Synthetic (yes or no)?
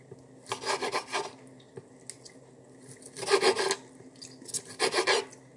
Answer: no